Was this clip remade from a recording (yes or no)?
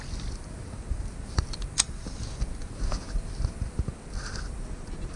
no